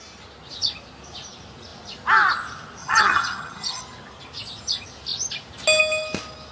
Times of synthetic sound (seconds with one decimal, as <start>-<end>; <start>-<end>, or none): 2.8-3.8